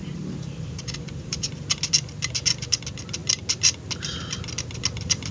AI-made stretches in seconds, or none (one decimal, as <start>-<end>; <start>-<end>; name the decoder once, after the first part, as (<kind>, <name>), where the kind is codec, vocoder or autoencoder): 0.0-1.5 (vocoder, BigVGAN v2)